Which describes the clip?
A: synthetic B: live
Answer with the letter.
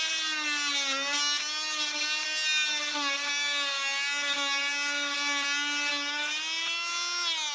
B